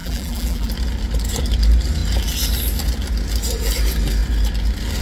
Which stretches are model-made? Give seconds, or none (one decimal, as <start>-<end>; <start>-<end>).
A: 0.0-0.7